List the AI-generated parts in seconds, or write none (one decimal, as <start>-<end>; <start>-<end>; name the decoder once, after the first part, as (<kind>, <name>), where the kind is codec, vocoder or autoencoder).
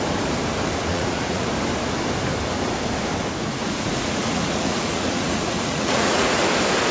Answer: 0.9-1.5 (vocoder, Vocos); 3.4-6.4